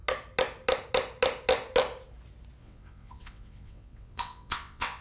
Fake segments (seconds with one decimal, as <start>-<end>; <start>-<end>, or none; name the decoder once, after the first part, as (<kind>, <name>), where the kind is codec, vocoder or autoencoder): 2.6-5.0 (vocoder, WaveNeXt)